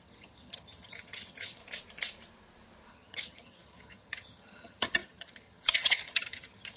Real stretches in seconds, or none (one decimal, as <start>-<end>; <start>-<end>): 1.6-2.9